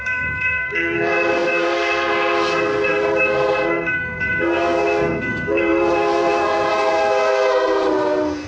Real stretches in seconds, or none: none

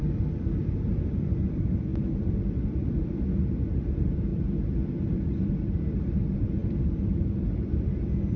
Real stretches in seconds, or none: 0.0-0.6; 1.2-8.4

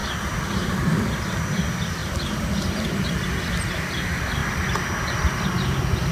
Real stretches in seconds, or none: 1.0-2.0; 3.1-4.4

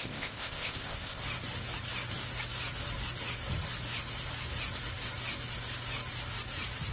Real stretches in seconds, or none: 1.2-6.9

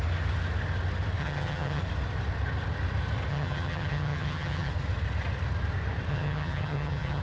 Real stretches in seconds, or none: 0.0-1.2; 1.8-3.3; 4.7-6.1